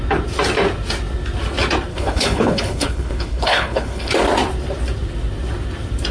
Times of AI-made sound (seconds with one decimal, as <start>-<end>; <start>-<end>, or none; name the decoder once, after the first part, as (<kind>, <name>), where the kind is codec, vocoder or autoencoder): 1.9-4.1 (codec, HILCodec)